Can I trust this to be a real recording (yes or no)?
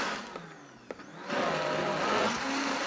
yes